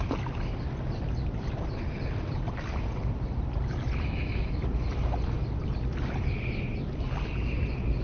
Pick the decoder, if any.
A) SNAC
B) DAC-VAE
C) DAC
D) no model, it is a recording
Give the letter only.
D